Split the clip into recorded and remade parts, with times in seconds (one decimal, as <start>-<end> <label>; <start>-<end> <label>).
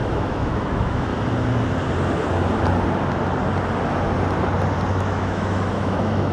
0.0-1.1 remade; 1.1-4.9 recorded; 4.9-6.3 remade